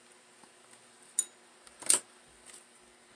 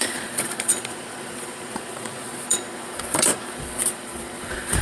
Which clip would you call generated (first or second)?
second